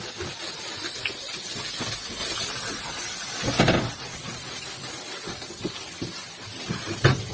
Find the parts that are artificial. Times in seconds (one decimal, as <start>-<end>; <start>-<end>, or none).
none